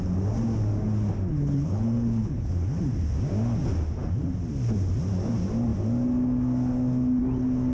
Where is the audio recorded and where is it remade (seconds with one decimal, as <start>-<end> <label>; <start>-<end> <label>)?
0.0-1.3 recorded; 1.3-2.8 remade; 2.8-7.7 recorded